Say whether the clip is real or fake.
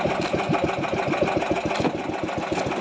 real